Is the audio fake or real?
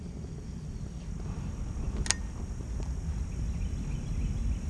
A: real